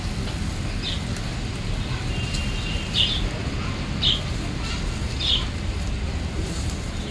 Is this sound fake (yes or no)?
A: no